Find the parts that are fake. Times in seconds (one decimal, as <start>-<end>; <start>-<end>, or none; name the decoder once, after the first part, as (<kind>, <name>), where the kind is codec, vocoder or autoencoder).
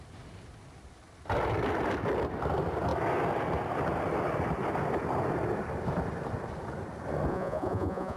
7.3-8.2 (vocoder, Vocos)